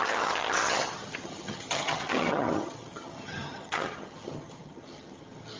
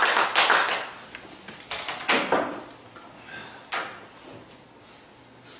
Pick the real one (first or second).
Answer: second